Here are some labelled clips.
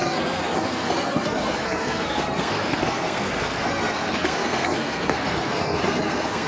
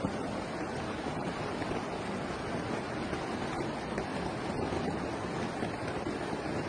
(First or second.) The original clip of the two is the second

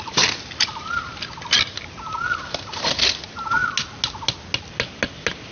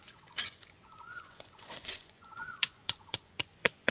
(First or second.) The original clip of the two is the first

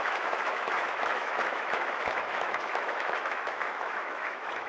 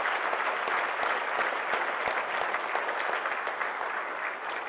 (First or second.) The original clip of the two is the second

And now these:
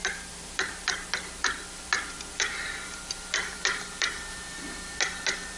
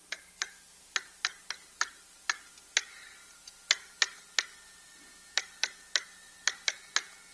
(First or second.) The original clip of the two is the second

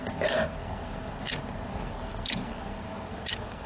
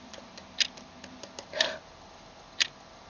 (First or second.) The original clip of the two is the second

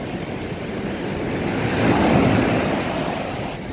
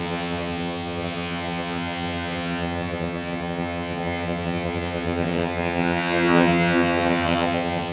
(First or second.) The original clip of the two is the first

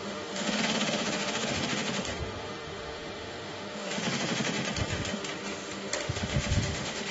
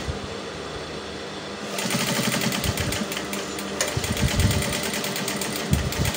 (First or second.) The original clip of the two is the second